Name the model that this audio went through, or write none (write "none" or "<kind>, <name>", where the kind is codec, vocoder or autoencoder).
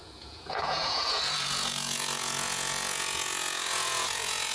vocoder, Vocos